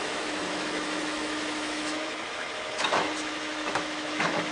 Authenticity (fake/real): fake